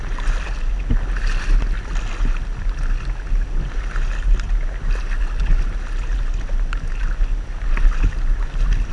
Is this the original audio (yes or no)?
yes